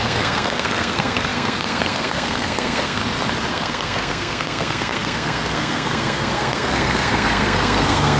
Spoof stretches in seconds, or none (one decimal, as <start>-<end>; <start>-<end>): 0.0-3.0; 3.5-8.2